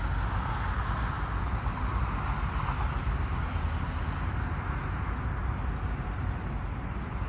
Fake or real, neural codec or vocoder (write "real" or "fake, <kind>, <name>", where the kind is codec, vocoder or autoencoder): real